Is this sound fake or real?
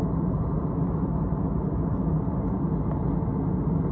real